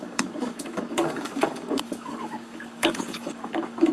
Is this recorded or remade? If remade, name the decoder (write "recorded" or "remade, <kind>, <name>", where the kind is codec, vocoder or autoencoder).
remade, codec, DAC